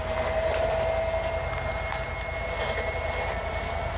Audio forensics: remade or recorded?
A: recorded